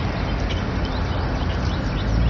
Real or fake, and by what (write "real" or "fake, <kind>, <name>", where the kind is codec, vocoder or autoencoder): real